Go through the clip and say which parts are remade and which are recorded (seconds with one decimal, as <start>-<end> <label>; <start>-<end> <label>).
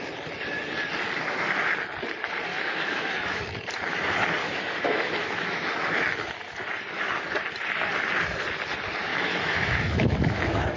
0.0-2.5 recorded; 2.5-3.4 remade; 3.4-4.4 recorded; 4.4-5.8 remade; 5.8-9.1 recorded; 9.1-10.8 remade